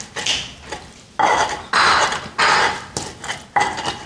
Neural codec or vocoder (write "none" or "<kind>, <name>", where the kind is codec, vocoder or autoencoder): none